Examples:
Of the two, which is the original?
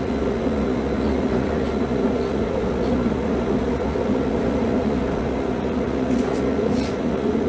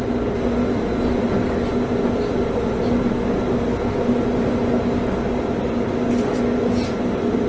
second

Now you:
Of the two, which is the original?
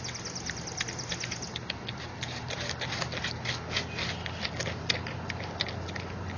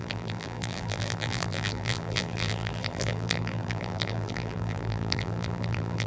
first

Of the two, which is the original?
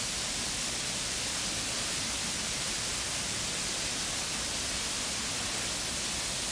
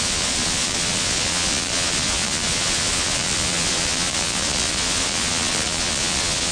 first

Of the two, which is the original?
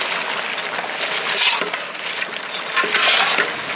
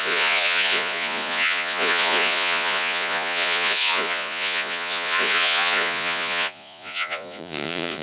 first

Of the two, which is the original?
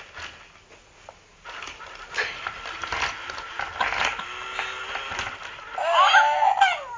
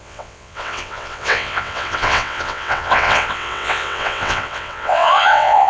first